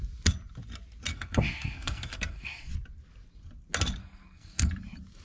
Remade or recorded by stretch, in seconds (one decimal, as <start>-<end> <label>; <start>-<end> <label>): 0.0-1.1 recorded; 1.1-2.7 remade; 2.7-4.0 recorded; 4.0-4.7 remade; 4.7-5.2 recorded